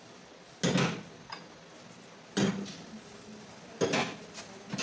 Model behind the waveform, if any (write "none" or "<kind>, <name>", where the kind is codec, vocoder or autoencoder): none